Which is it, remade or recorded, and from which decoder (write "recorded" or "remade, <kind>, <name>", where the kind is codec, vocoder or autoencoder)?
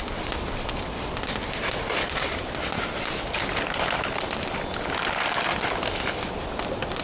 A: recorded